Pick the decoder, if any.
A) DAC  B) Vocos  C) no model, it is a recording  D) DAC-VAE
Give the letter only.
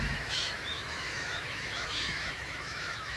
D